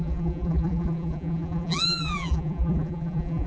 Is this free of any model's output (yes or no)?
no